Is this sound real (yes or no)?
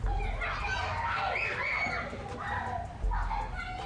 yes